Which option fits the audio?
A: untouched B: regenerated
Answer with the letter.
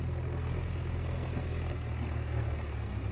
B